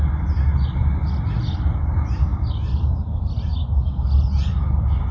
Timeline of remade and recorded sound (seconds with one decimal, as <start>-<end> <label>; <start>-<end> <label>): 0.0-5.1 recorded